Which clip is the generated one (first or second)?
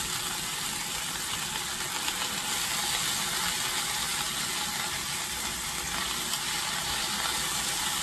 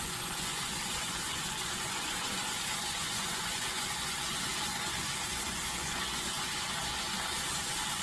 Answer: second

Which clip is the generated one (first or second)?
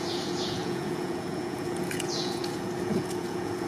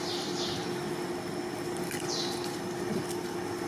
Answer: first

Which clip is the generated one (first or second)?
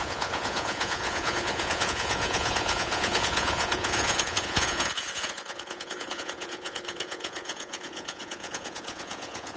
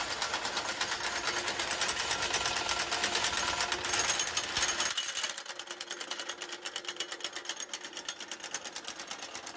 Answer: first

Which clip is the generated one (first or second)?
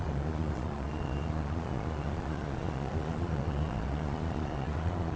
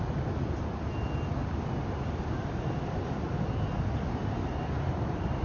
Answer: first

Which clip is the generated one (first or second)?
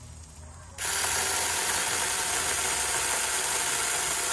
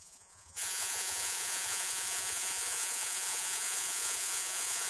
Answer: second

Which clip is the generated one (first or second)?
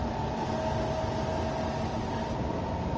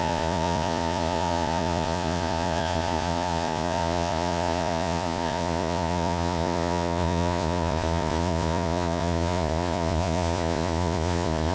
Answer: second